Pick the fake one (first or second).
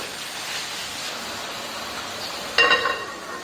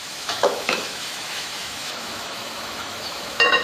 second